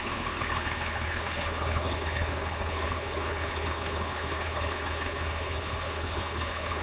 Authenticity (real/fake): fake